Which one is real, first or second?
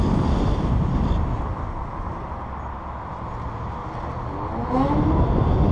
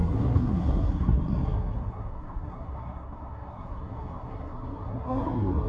first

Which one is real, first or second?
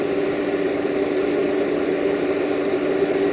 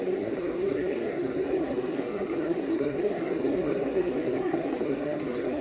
first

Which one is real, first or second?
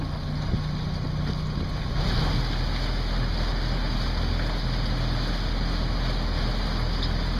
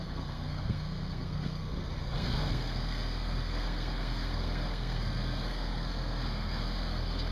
first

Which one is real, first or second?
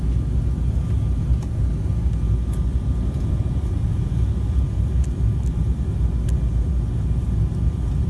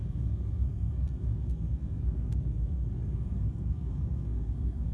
first